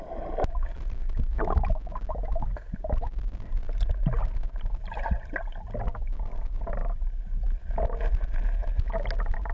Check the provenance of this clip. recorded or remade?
recorded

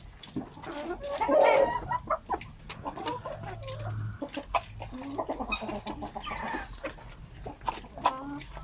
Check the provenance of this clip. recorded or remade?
recorded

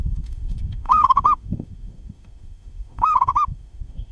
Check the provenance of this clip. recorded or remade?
remade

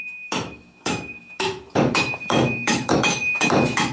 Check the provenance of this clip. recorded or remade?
remade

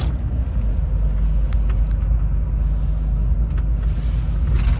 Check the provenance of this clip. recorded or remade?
recorded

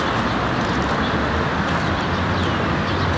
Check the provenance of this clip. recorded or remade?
recorded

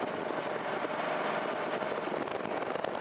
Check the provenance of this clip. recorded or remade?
recorded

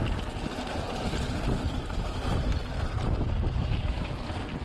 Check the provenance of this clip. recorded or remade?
recorded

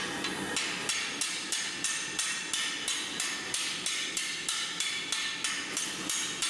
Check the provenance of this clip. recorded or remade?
recorded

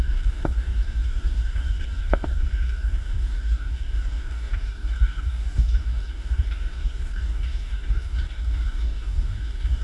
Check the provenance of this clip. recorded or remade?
remade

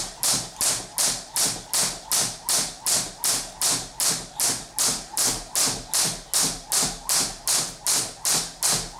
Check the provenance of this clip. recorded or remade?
recorded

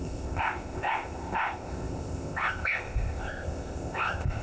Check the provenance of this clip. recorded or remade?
remade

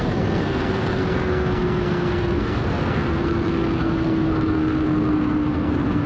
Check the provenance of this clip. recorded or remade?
remade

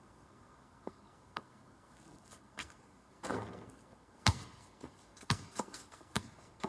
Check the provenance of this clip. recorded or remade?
remade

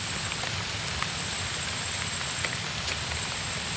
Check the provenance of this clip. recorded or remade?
recorded